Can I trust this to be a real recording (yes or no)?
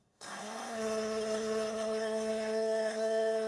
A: no